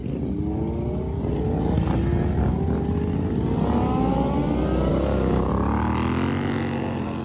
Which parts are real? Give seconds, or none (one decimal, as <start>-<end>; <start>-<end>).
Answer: 0.0-4.9; 5.5-7.2